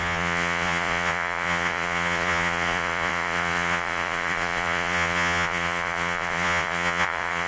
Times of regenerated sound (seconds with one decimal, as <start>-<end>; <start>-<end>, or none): 0.0-7.5